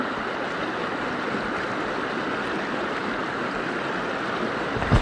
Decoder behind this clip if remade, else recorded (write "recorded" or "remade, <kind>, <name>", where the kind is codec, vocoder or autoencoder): recorded